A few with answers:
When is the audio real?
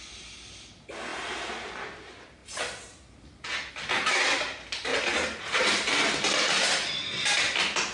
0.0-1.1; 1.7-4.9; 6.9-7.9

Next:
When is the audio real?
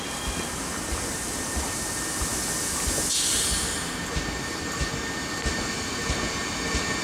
0.0-7.0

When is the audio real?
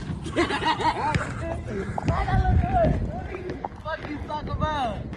0.0-5.2